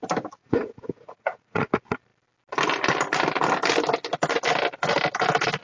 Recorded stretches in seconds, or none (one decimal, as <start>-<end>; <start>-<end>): 0.0-0.4; 1.7-5.6